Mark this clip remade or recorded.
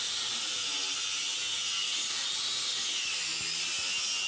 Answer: recorded